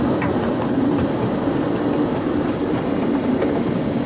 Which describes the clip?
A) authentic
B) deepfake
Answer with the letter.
A